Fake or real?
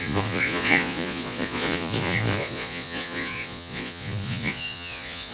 fake